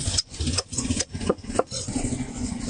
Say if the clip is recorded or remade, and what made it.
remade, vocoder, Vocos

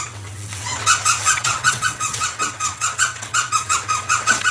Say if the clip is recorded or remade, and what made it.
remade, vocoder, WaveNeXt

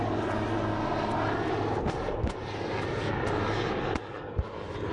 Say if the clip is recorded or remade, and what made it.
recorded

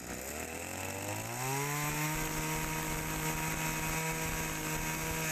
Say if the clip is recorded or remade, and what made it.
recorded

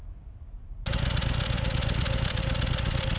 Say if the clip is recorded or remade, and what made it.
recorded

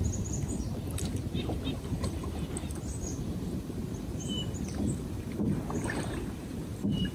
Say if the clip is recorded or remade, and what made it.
remade, vocoder, BigVGAN v2